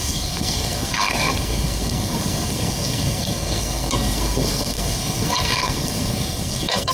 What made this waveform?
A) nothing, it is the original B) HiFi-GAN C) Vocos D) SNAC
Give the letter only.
D